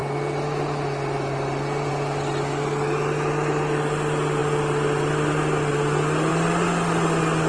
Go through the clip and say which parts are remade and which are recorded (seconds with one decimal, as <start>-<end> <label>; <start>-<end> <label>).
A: 0.0-7.5 recorded